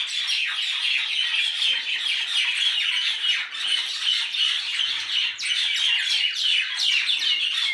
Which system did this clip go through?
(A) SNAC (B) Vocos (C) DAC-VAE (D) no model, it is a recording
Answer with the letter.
D